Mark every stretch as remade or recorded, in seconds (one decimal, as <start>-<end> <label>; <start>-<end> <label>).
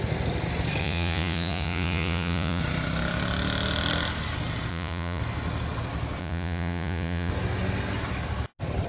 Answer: 0.0-0.8 recorded; 0.8-2.6 remade; 2.6-4.7 recorded; 4.7-5.2 remade; 5.2-6.2 recorded; 6.2-7.3 remade; 7.3-8.9 recorded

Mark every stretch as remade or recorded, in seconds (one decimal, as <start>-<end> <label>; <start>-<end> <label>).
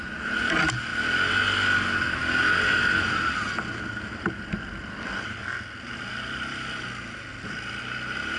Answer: 0.0-0.9 remade; 0.9-4.2 recorded; 4.2-5.4 remade; 5.4-6.1 recorded; 6.1-8.4 remade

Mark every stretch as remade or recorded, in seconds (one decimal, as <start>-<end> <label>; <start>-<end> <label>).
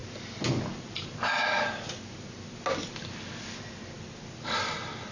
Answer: 0.0-5.1 recorded